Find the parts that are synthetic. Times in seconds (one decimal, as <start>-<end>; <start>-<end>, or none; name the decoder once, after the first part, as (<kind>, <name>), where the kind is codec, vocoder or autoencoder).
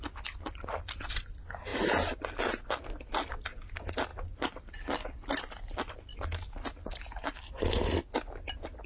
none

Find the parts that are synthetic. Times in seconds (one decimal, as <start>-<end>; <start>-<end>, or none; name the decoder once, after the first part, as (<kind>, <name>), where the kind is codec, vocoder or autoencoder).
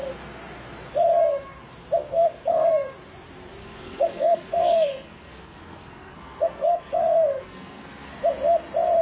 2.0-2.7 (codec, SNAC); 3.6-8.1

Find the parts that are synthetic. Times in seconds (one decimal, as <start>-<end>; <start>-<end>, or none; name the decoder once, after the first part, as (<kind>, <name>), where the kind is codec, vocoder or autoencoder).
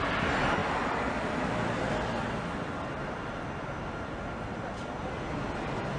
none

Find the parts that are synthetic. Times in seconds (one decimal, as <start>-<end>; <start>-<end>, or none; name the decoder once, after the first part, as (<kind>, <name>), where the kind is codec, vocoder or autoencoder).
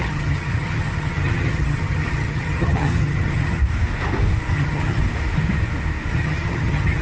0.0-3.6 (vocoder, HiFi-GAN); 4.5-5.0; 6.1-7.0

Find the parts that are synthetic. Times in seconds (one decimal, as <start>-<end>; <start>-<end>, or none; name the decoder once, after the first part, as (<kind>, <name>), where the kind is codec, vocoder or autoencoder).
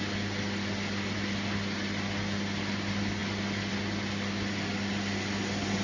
none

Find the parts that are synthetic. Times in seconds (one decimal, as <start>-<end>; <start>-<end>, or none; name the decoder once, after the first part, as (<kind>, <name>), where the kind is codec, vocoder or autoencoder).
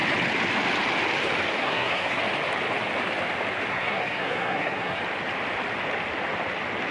1.6-2.2 (codec, SNAC); 3.7-5.0